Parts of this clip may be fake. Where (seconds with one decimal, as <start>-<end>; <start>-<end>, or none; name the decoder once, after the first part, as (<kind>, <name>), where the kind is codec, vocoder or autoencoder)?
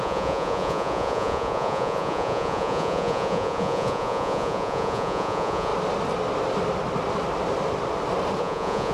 0.0-5.7 (vocoder, Vocos); 8.4-8.9